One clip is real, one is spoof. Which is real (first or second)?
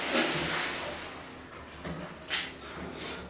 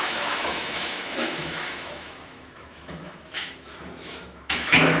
first